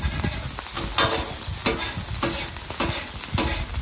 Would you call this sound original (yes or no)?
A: yes